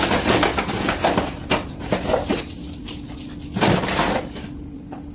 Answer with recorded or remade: recorded